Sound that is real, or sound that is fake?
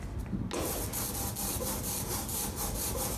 real